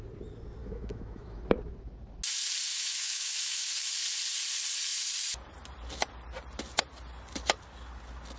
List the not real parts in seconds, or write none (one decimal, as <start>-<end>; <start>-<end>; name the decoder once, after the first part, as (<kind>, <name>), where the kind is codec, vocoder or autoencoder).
0.6-1.4 (autoencoder, DAC-VAE); 2.7-3.7